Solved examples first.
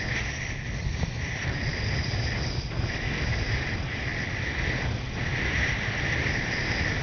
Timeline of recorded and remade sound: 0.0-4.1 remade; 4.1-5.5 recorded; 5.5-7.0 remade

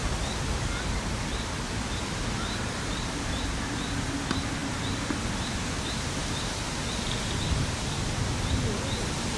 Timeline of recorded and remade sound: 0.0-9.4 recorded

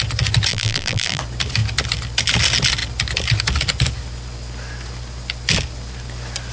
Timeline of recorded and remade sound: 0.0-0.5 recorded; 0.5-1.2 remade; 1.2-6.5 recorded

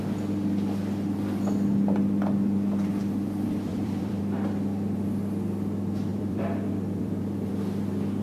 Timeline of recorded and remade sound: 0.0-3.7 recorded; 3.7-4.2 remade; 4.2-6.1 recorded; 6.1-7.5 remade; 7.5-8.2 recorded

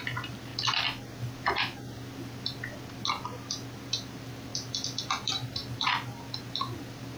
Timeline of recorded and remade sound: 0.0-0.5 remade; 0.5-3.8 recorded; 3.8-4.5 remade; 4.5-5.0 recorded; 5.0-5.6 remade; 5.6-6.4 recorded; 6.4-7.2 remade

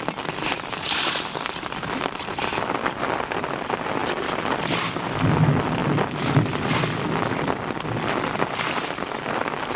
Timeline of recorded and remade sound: 0.0-5.8 recorded; 5.8-7.9 remade; 7.9-9.8 recorded